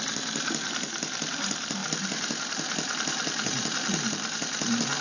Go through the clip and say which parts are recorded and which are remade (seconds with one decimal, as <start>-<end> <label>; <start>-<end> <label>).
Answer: 0.0-5.0 recorded